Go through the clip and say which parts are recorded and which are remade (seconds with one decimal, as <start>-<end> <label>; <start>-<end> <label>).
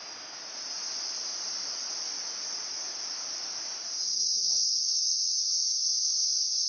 0.0-4.6 recorded; 4.6-5.4 remade; 5.4-6.7 recorded